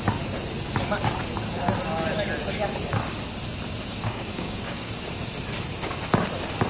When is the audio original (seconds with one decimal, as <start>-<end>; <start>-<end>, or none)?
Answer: 0.0-3.9; 4.9-6.7